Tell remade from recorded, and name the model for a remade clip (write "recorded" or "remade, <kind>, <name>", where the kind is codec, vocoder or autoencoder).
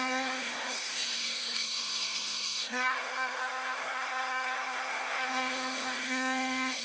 remade, codec, SNAC